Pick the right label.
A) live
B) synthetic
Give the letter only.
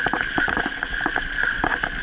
A